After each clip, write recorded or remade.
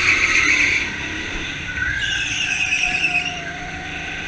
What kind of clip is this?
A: recorded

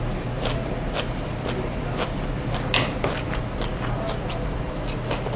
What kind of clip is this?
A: recorded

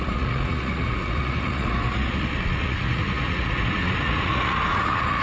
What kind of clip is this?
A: remade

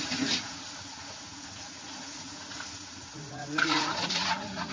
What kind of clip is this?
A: remade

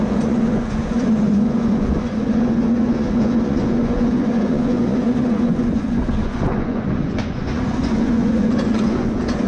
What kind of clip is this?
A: remade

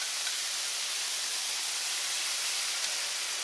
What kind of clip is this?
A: recorded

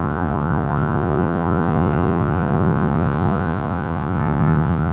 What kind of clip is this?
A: remade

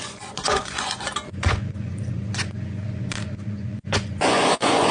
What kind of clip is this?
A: remade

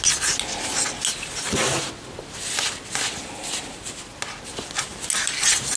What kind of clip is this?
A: recorded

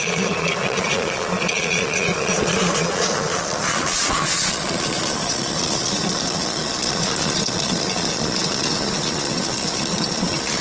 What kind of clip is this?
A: remade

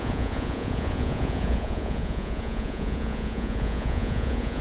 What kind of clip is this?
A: remade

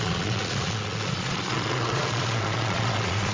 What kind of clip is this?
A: remade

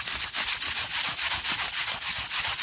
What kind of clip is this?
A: recorded